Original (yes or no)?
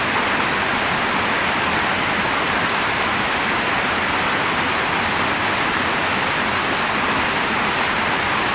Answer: yes